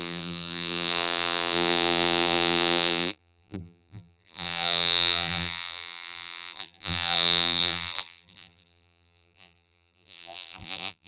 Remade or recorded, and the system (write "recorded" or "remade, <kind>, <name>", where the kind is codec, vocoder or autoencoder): remade, vocoder, BigVGAN v2